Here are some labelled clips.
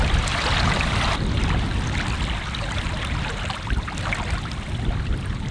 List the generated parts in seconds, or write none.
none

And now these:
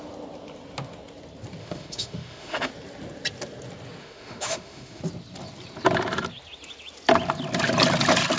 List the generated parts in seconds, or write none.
1.6-2.7 (autoencoder, DAC-VAE); 4.0-5.0

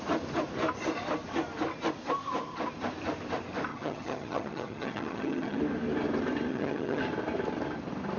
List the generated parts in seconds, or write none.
3.7-5.6 (vocoder, HiFi-GAN); 6.5-7.0

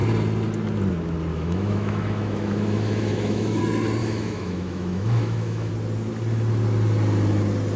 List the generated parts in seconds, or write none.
1.3-3.6 (autoencoder, DAC-VAE); 4.0-5.7

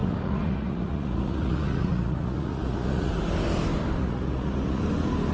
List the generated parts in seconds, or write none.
0.0-3.1 (vocoder, Vocos); 4.0-4.8

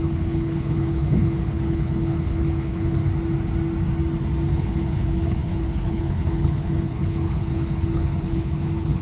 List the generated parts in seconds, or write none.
0.0-3.0 (codec, HILCodec); 4.5-9.0

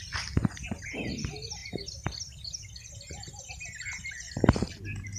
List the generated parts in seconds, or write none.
none

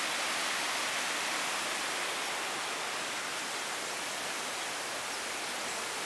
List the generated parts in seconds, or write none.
none